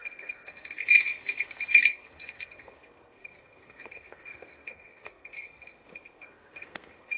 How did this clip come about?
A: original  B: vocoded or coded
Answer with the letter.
B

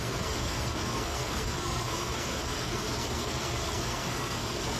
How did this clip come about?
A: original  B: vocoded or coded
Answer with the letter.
B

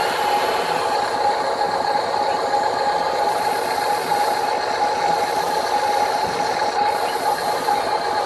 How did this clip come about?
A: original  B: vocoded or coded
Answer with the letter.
A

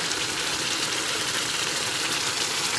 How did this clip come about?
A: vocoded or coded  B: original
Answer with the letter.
B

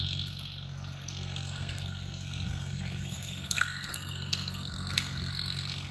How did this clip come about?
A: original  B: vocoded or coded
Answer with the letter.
B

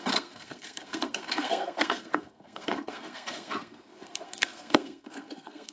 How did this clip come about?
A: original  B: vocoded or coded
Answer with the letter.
B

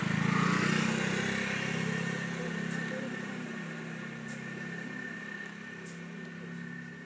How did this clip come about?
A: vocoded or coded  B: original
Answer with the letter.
B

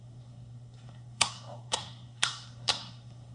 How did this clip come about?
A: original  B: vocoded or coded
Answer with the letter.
B